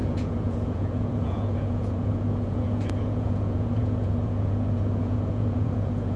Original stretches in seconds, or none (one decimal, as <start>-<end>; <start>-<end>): none